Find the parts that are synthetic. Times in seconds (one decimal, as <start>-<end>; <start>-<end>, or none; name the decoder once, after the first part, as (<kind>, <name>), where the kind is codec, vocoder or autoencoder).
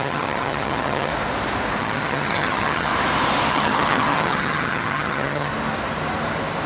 0.0-1.1 (vocoder, HiFi-GAN); 1.8-2.9; 3.5-5.5